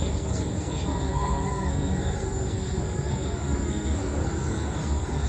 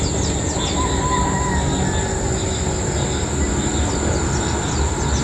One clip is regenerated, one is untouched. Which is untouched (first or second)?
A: second